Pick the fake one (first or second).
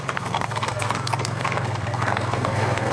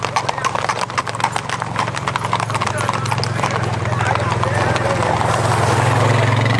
first